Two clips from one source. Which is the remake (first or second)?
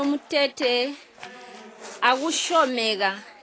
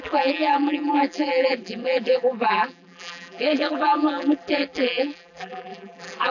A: second